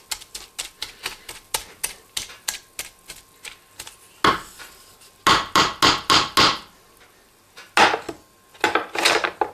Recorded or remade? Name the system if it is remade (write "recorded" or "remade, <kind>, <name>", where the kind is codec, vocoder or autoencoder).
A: recorded